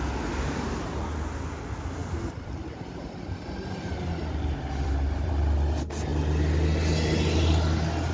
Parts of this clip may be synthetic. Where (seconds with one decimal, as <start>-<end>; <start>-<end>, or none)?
4.2-5.3